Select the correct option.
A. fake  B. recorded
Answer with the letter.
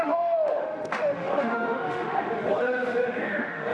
A